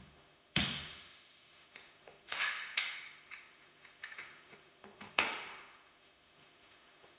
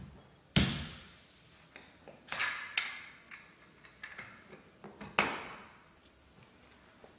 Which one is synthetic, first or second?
first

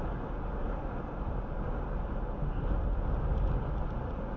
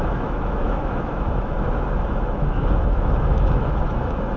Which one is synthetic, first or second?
second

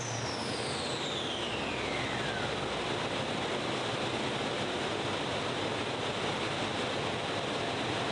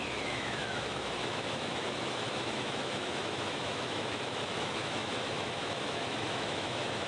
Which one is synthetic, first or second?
second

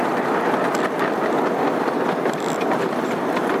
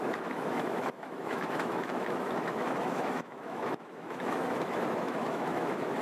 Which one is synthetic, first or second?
second